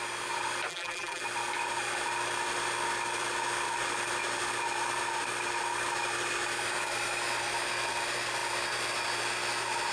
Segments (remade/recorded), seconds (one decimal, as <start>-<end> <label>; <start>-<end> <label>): 0.0-0.7 recorded; 0.7-1.2 remade; 1.2-9.9 recorded